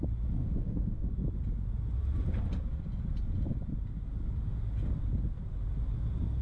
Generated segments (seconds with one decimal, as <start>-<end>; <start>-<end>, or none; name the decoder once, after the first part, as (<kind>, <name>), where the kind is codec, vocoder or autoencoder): 0.4-1.1 (autoencoder, DAC-VAE)